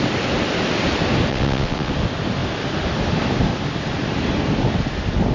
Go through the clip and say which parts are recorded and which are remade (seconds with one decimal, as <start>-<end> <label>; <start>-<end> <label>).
0.0-1.3 recorded; 1.3-1.9 remade; 1.9-5.3 recorded